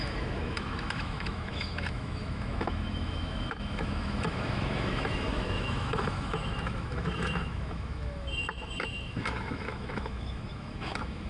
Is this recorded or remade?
remade